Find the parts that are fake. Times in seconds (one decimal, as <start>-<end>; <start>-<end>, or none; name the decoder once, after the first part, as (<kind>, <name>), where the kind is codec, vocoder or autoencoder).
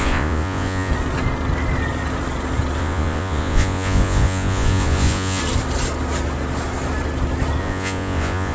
0.0-0.9 (vocoder, Vocos); 2.8-5.4; 7.6-8.5